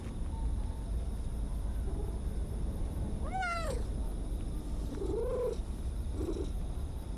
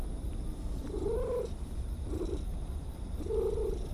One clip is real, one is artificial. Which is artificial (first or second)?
second